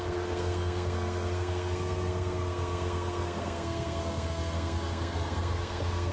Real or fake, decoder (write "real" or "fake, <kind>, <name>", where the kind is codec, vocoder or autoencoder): fake, codec, SNAC